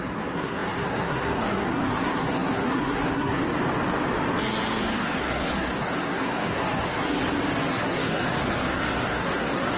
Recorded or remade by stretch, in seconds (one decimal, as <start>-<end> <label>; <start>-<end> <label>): 0.0-3.4 remade; 3.4-4.8 recorded; 4.8-7.2 remade; 7.2-7.7 recorded; 7.7-9.8 remade